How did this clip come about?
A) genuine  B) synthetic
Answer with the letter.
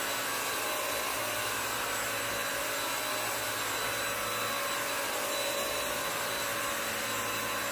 A